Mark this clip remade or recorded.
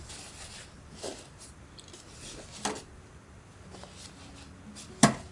recorded